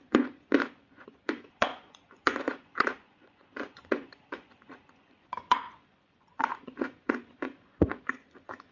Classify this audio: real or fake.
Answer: fake